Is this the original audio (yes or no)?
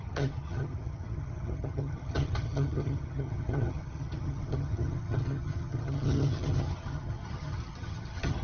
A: no